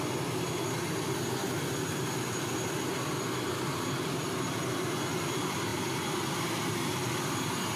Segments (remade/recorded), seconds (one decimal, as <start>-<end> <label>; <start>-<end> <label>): 0.0-7.8 recorded